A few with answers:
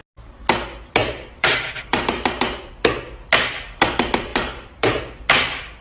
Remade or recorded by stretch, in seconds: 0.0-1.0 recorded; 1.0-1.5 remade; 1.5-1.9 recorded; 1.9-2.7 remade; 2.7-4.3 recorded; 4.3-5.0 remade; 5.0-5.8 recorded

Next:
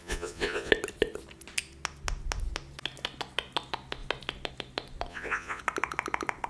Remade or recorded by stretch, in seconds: 0.0-0.7 remade; 0.7-5.1 recorded; 5.1-5.6 remade; 5.6-6.5 recorded